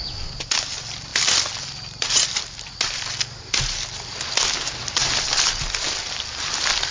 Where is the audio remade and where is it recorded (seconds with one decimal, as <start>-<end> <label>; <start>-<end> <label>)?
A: 0.0-6.9 recorded